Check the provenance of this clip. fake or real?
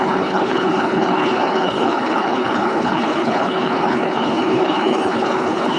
fake